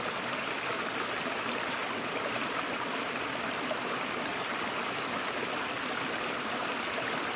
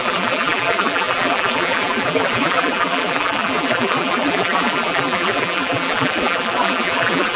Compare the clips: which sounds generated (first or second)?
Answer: second